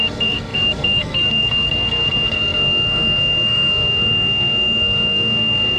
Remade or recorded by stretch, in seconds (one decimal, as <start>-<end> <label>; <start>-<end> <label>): 0.0-5.8 remade